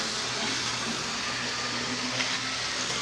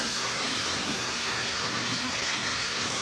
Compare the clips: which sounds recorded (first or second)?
first